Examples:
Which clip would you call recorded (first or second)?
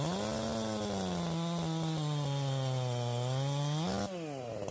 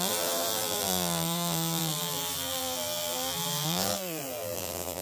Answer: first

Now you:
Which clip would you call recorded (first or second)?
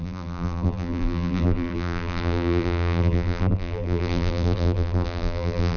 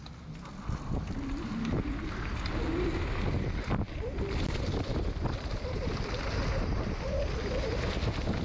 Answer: second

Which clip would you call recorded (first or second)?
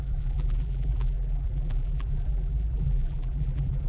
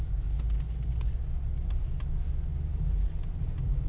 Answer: second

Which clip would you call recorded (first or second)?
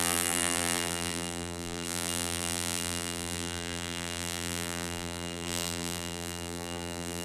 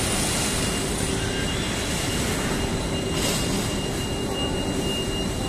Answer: second